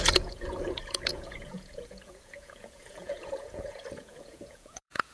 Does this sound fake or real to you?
fake